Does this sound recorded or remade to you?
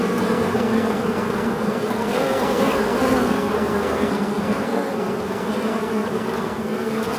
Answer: remade